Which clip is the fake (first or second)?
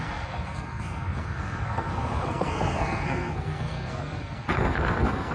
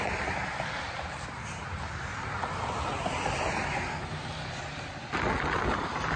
first